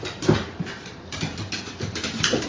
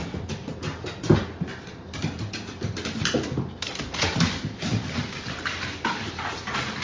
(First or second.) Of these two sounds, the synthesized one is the first